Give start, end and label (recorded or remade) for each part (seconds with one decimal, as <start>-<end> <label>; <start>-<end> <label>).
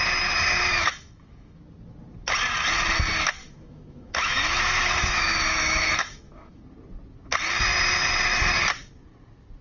0.0-0.7 recorded; 0.7-1.6 remade; 1.6-3.4 recorded; 3.4-6.6 remade; 6.6-9.6 recorded